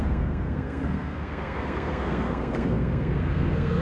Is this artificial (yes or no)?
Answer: yes